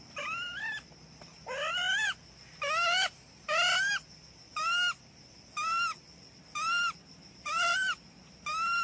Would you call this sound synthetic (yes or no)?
yes